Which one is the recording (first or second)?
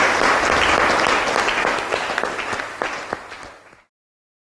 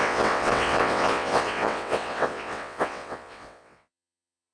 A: first